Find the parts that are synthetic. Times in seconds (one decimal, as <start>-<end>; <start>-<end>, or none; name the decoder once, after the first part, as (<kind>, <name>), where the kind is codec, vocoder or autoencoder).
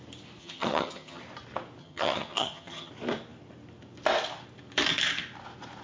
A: 0.4-1.2 (vocoder, HiFi-GAN); 1.8-2.9